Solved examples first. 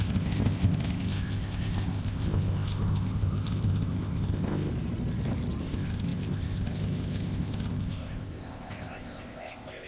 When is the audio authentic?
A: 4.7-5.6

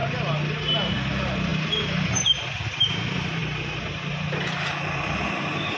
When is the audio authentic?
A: 0.0-1.1

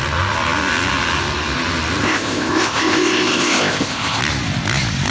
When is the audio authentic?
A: 0.0-2.0; 4.2-5.1

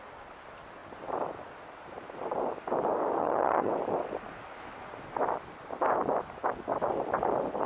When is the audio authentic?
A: 0.0-3.2; 3.7-7.7

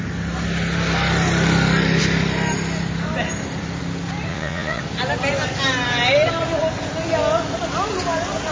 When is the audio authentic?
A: 0.0-4.3; 4.8-8.5

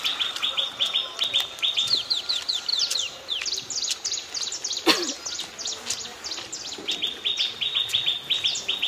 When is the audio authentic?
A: 0.0-8.9

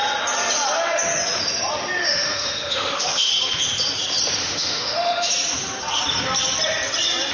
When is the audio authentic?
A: 0.0-2.0; 3.3-4.4; 5.3-7.3